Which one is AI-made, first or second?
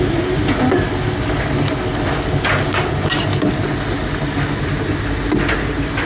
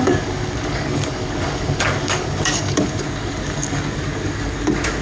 second